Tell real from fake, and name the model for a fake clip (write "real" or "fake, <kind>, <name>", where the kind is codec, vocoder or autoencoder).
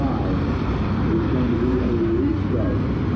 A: real